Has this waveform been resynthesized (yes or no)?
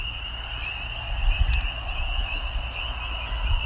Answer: no